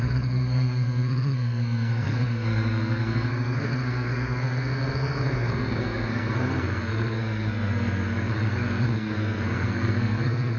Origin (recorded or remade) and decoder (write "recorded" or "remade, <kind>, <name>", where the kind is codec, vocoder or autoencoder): remade, codec, SNAC